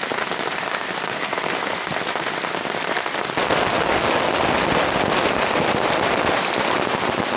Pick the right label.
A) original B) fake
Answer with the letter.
A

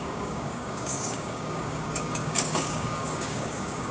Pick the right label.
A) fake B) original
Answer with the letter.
A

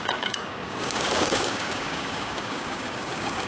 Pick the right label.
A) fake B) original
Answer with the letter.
A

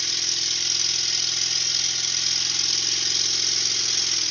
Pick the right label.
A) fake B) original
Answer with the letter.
B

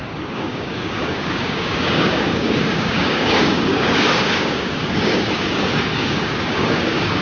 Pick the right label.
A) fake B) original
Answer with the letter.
A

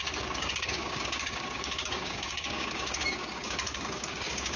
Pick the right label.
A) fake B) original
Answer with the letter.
A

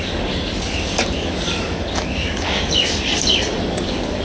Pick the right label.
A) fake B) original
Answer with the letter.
A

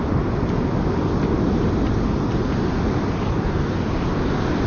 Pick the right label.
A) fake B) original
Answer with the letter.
B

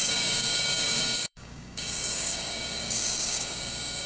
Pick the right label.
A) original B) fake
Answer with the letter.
B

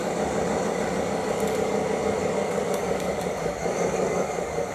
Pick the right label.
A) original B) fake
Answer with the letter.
B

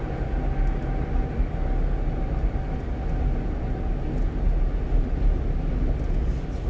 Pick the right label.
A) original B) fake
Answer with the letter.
A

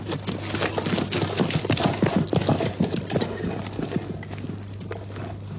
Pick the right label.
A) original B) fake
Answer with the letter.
A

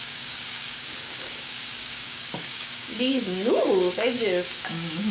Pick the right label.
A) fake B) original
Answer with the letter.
A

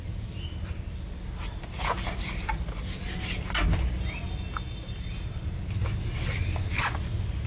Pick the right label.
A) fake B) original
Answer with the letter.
B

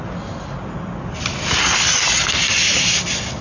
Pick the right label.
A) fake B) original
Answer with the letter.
B